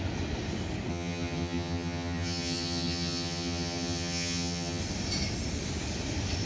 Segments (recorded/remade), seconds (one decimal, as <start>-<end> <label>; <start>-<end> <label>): 0.0-0.9 recorded; 0.9-4.8 remade; 4.8-6.5 recorded